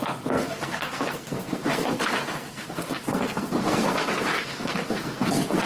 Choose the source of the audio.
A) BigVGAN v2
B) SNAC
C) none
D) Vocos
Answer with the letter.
B